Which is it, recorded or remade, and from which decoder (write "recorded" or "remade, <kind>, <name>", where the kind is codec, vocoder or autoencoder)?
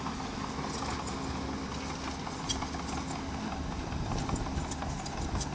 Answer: recorded